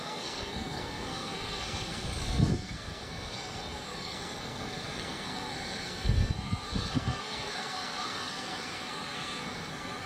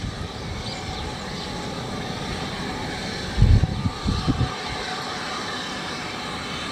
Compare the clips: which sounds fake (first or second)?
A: first